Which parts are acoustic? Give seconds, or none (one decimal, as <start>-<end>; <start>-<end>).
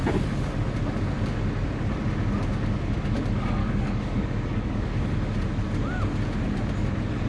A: 0.0-3.6; 4.9-7.3